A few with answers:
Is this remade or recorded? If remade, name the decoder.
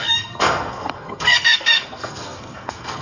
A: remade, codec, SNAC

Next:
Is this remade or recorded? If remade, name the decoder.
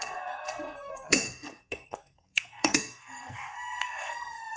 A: remade, codec, SNAC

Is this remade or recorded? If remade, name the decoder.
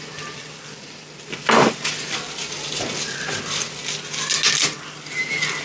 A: recorded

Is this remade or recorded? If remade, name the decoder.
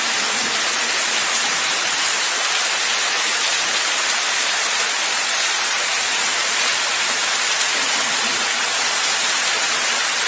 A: remade, vocoder, BigVGAN v2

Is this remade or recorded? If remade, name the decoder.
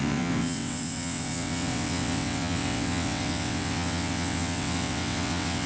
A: remade, vocoder, WaveNeXt